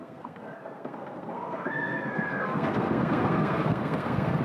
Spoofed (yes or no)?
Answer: yes